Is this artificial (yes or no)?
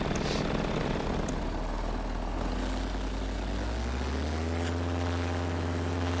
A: no